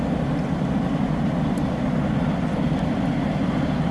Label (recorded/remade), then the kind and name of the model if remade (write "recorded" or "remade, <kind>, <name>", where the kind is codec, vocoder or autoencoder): recorded